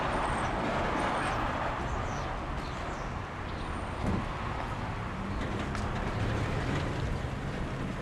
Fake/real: real